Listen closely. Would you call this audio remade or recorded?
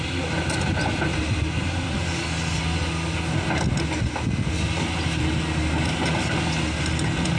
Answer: recorded